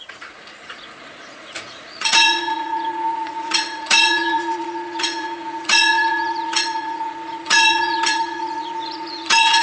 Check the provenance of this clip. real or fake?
fake